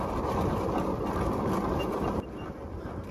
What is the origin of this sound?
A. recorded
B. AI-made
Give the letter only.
A